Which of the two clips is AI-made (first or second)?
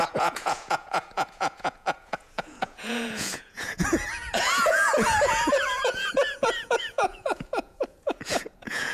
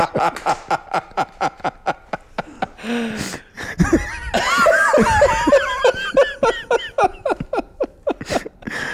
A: first